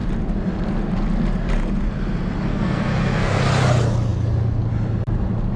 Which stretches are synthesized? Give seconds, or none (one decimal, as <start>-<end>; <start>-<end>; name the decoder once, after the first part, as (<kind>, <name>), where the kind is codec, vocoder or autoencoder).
2.5-3.4 (codec, SNAC)